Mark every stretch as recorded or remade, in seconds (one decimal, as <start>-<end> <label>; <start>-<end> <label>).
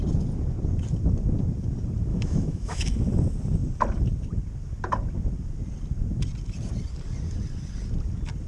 0.0-2.1 recorded; 2.1-2.9 remade; 2.9-8.5 recorded